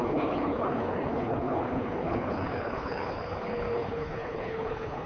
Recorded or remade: remade